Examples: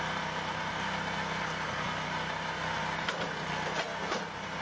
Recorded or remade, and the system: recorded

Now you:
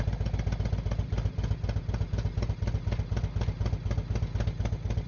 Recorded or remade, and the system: recorded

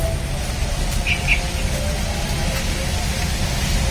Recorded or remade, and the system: recorded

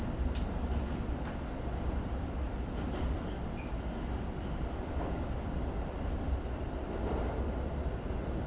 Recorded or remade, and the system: recorded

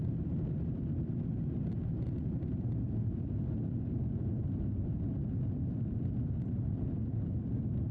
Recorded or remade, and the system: recorded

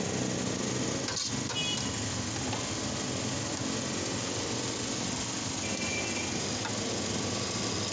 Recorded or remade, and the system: recorded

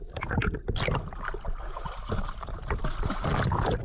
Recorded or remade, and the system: recorded